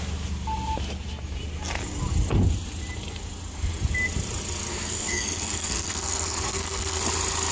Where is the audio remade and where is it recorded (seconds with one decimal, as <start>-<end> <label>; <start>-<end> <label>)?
0.0-4.7 recorded; 4.7-7.0 remade; 7.0-7.5 recorded